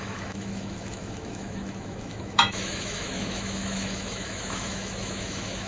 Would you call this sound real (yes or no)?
no